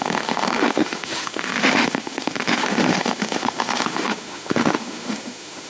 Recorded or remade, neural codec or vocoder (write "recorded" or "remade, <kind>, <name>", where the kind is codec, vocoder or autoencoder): remade, autoencoder, DAC-VAE